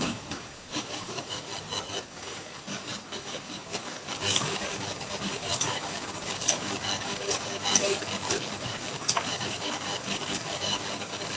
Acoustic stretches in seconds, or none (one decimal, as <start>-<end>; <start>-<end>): 1.5-2.0

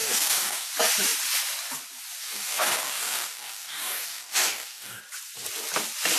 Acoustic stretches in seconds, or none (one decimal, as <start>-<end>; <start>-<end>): 0.7-2.2; 5.0-6.2

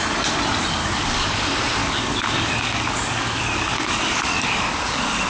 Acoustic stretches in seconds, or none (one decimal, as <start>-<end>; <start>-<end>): 0.0-0.8; 1.4-1.8

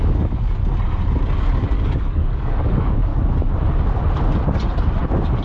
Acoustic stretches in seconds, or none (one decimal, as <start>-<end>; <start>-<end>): 0.6-1.4; 3.1-5.4

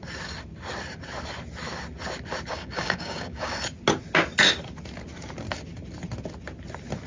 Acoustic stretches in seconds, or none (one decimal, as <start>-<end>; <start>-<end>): 0.0-2.5; 3.5-7.1